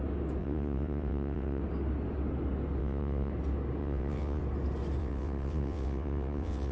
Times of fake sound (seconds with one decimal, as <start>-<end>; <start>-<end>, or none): 0.4-1.6; 2.8-3.3; 3.8-4.4; 5.0-6.7